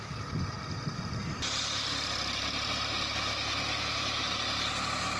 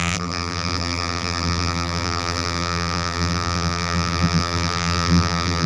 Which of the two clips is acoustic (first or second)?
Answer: first